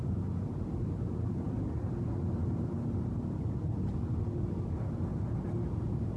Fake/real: real